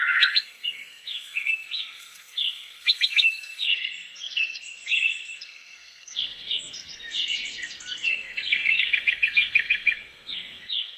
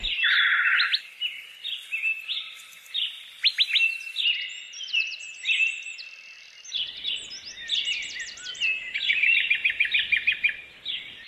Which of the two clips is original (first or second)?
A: second